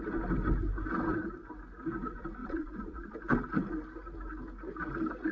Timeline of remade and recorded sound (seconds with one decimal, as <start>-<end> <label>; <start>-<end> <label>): 0.0-2.4 recorded; 2.4-3.1 remade; 3.1-5.3 recorded